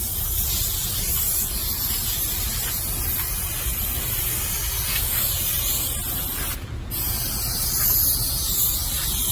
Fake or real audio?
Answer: real